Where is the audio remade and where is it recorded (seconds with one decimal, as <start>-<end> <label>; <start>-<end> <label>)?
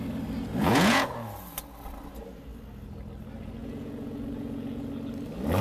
0.0-0.6 recorded; 0.6-1.1 remade; 1.1-3.6 recorded; 3.6-4.9 remade; 4.9-5.6 recorded